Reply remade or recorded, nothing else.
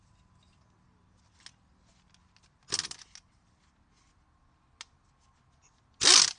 recorded